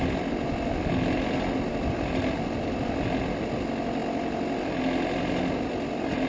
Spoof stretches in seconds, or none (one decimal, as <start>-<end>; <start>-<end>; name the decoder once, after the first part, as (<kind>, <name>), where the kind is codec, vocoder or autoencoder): none